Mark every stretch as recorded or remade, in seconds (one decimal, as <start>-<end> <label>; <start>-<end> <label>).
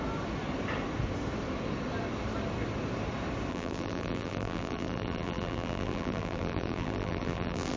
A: 0.0-3.5 recorded; 3.5-7.8 remade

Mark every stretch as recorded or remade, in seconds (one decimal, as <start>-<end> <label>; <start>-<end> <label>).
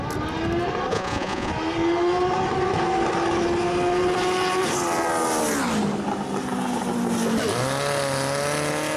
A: 0.0-0.9 recorded; 0.9-1.5 remade; 1.5-9.0 recorded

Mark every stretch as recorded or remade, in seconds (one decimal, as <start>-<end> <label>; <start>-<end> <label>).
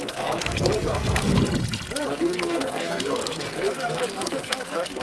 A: 0.0-1.4 remade; 1.4-2.1 recorded; 2.1-5.0 remade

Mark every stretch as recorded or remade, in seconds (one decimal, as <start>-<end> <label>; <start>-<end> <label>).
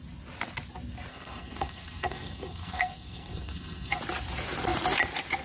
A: 0.0-1.1 recorded; 1.1-4.0 remade; 4.0-5.4 recorded